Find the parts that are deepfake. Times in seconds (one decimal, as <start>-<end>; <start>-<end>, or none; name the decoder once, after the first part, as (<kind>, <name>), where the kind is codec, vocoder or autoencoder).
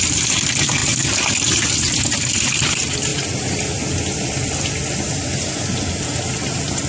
none